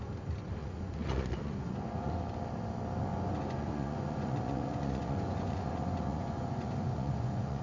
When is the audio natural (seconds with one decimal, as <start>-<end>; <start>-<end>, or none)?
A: 0.0-0.6; 2.2-3.1